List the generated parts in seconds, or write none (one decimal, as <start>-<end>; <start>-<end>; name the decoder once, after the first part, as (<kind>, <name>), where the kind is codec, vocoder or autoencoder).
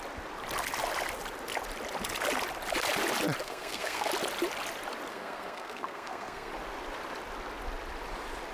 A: 3.4-4.1 (codec, SNAC); 5.1-6.5